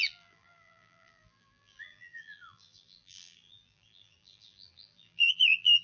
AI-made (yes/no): yes